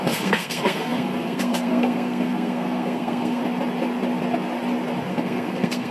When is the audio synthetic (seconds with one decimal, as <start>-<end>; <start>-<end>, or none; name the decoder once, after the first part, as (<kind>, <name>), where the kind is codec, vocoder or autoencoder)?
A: 0.0-3.4 (codec, SNAC); 5.1-5.9